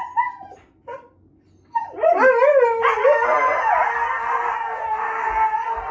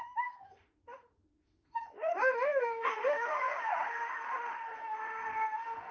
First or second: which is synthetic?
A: second